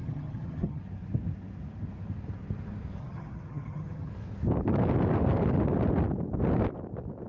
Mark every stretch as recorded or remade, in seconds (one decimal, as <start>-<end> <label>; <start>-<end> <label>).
0.0-0.8 remade; 0.8-3.0 recorded; 3.0-4.1 remade; 4.1-7.3 recorded